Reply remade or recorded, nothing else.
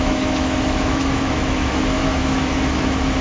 remade